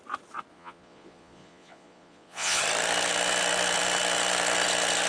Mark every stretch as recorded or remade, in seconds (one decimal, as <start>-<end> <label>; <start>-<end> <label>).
0.0-0.5 recorded; 0.5-2.6 remade; 2.6-5.1 recorded